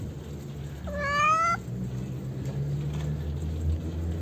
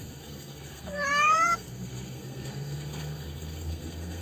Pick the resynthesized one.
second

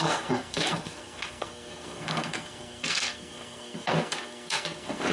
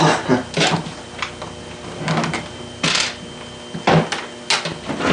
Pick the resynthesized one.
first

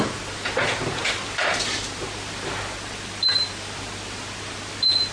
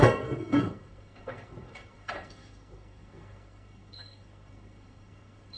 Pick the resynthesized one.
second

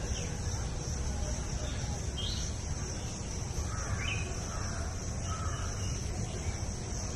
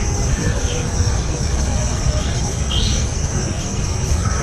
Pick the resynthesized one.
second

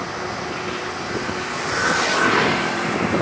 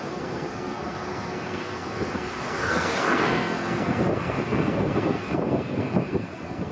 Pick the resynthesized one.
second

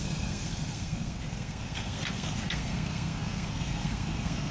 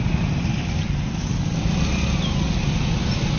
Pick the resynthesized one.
first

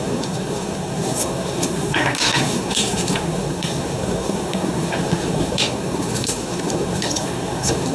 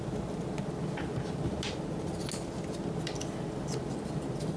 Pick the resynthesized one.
first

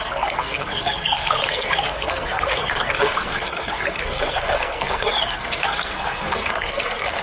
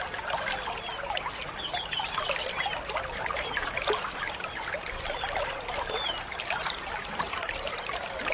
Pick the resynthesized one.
first